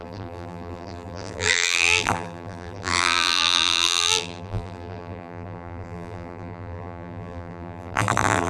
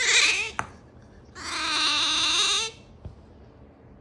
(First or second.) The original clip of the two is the second